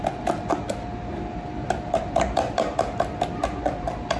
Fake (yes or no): no